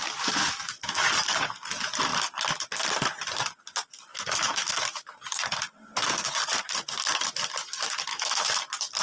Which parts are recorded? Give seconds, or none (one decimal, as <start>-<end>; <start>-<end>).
0.0-4.1; 5.1-8.1; 8.6-9.0